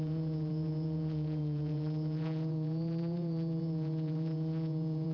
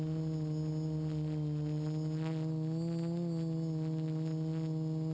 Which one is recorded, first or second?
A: second